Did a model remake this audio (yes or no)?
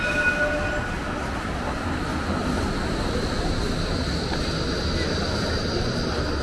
no